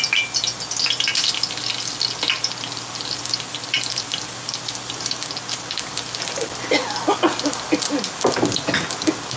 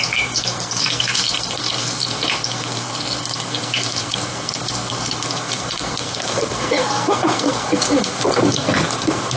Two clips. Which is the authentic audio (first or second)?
first